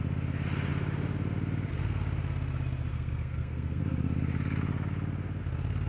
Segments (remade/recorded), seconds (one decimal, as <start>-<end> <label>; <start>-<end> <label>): 0.0-2.9 recorded; 2.9-3.8 remade; 3.8-5.9 recorded